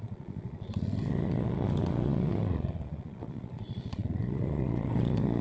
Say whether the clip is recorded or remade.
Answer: remade